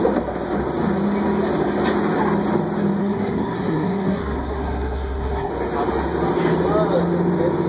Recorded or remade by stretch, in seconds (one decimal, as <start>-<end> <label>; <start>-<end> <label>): 0.0-3.0 recorded; 3.0-5.5 remade; 5.5-7.7 recorded